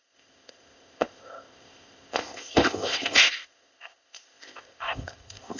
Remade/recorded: remade